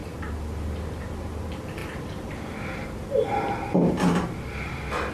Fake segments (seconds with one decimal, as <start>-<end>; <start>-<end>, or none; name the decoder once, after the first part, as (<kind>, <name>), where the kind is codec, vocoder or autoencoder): none